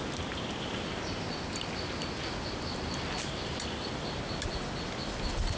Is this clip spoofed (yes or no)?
no